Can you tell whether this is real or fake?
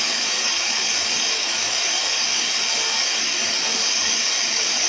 fake